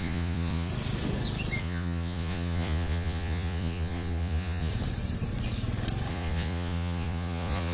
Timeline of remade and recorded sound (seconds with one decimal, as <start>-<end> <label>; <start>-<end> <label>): 0.0-0.7 remade; 0.7-1.6 recorded; 1.6-4.7 remade; 4.7-6.1 recorded; 6.1-7.7 remade